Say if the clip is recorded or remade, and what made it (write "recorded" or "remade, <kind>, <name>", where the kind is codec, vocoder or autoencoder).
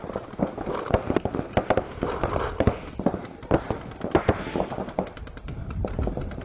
recorded